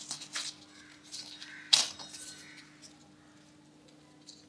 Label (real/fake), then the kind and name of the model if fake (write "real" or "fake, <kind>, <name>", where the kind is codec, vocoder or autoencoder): real